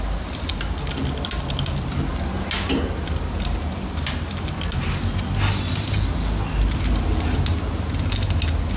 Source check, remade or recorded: recorded